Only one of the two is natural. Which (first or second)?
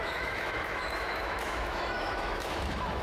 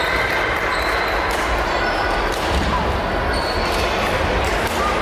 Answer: second